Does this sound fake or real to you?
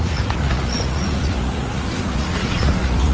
fake